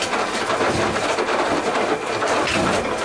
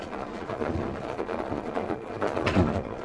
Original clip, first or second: first